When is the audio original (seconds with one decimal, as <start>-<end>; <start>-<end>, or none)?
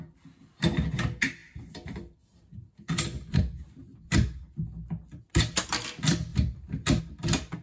0.0-7.6